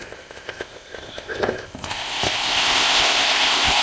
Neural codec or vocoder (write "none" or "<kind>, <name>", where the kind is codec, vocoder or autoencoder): codec, ZipCodec